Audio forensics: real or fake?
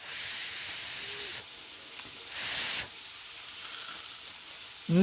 real